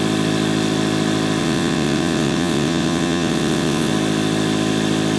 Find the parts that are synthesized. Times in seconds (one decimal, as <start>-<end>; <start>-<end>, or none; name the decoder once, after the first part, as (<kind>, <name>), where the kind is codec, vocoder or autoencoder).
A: 1.4-3.9 (vocoder, WaveNeXt)